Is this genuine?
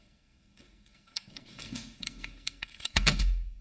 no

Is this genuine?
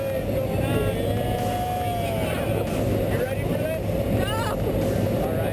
yes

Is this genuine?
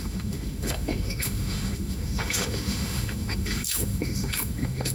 no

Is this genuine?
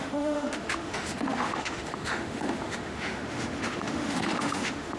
no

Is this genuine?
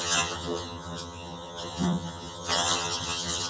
no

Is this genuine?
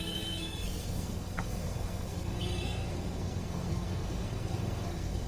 no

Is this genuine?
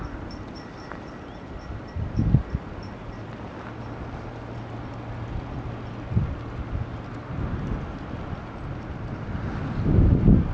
yes